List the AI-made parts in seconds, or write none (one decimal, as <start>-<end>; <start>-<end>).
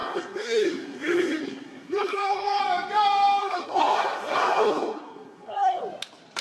0.0-2.6; 3.4-5.8